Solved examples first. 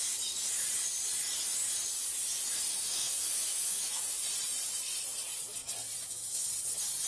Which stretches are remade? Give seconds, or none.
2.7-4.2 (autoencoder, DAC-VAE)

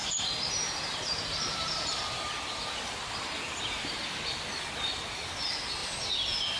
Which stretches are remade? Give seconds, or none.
0.0-4.0 (vocoder, BigVGAN v2)

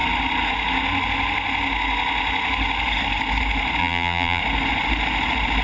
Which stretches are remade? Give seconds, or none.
3.8-4.4 (vocoder, BigVGAN v2)

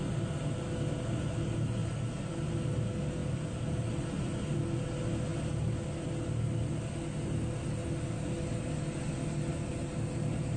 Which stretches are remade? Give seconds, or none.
1.8-2.5 (vocoder, BigVGAN v2); 3.2-4.3